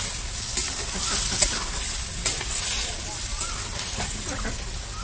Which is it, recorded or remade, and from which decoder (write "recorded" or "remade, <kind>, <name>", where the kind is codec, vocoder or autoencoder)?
recorded